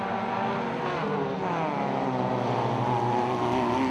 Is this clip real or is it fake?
real